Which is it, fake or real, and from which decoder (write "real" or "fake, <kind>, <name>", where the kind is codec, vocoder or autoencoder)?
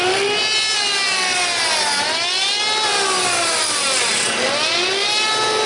real